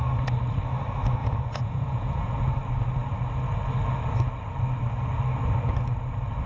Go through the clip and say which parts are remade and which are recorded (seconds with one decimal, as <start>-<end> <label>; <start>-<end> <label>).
0.0-1.2 recorded; 1.2-2.4 remade; 2.4-6.5 recorded